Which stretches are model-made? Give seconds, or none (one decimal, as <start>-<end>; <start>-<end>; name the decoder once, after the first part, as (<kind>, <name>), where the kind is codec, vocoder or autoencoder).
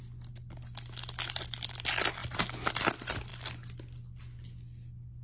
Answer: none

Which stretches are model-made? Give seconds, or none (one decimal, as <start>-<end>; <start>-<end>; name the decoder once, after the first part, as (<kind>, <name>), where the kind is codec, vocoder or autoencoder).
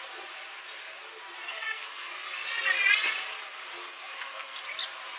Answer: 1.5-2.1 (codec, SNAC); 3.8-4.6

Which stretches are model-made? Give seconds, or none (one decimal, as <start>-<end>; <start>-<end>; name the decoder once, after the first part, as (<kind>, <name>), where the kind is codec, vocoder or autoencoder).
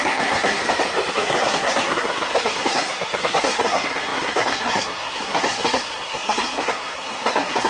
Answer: 0.0-0.6 (codec, SNAC); 1.1-7.7